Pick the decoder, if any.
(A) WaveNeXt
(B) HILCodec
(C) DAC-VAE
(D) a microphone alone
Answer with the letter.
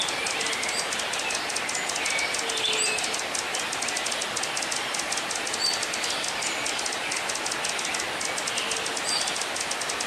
D